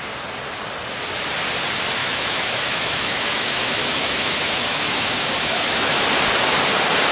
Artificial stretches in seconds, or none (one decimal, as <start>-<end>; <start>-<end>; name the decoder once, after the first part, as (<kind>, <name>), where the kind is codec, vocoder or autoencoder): 2.0-6.0 (autoencoder, DAC-VAE)